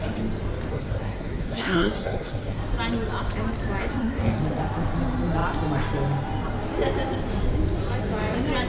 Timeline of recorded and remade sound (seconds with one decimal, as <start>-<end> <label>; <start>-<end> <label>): 0.0-0.7 recorded; 0.7-2.6 remade; 2.6-3.8 recorded; 3.8-4.4 remade; 4.4-8.7 recorded